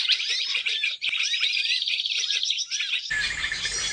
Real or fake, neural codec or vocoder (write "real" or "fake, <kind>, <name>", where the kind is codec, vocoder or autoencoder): fake, vocoder, BigVGAN v2